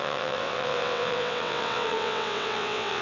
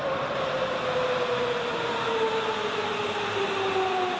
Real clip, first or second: second